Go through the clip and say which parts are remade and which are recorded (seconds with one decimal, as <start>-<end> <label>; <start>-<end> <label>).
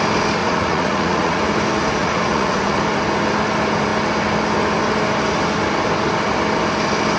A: 0.0-0.4 recorded; 0.4-1.4 remade; 1.4-2.0 recorded; 2.0-2.8 remade; 2.8-7.2 recorded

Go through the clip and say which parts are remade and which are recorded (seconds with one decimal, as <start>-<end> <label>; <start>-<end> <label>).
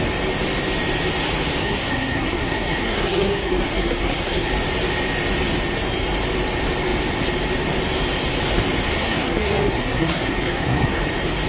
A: 0.0-1.6 recorded; 1.6-4.5 remade; 4.5-8.9 recorded; 8.9-11.0 remade; 11.0-11.5 recorded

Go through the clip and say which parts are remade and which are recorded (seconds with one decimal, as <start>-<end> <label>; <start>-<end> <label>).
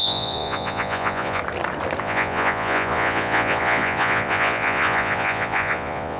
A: 0.0-1.4 remade; 1.4-2.0 recorded; 2.0-6.2 remade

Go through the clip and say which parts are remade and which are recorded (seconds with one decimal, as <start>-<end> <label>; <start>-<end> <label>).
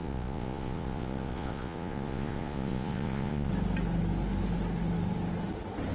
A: 0.0-3.5 remade; 3.5-5.9 recorded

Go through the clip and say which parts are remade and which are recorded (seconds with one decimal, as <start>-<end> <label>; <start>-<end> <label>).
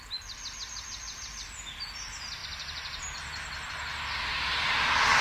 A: 0.0-5.2 recorded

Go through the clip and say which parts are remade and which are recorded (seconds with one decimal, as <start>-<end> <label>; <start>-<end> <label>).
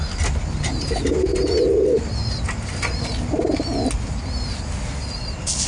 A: 0.0-5.7 recorded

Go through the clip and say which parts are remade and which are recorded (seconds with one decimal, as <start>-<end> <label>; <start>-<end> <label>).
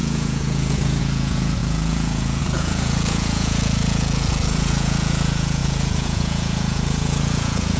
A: 0.0-7.8 remade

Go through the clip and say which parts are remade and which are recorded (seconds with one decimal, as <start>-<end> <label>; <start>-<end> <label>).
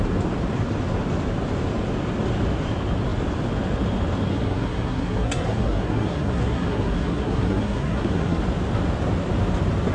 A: 0.0-4.3 recorded; 4.3-8.4 remade; 8.4-9.9 recorded